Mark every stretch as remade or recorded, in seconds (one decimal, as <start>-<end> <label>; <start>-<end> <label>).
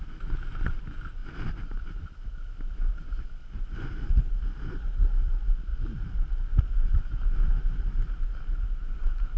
0.0-9.4 recorded